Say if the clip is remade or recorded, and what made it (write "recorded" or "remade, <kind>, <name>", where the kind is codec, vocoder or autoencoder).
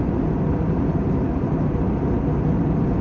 recorded